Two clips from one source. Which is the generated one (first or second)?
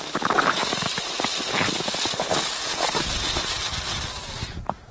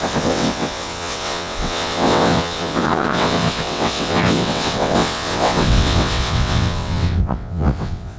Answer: second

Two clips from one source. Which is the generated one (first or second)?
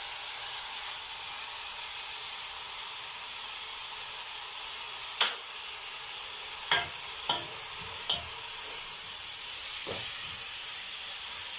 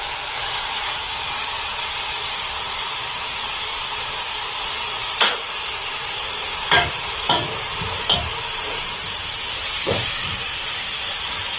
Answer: second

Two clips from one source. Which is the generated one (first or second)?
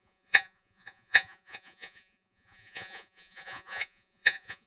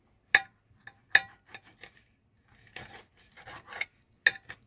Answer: first